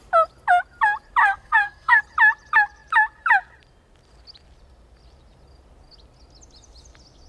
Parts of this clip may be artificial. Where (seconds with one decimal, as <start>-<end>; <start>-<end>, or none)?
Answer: 1.2-2.0